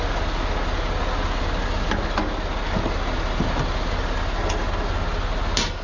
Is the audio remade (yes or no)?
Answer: no